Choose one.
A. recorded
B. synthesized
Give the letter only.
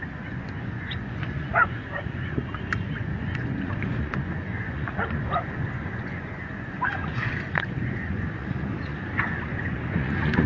B